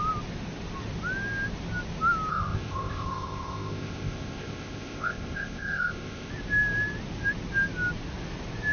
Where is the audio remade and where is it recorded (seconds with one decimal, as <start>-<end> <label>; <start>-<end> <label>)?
0.0-2.3 recorded; 2.3-6.3 remade; 6.3-8.7 recorded